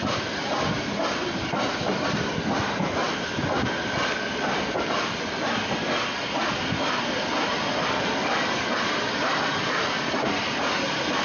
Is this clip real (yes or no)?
yes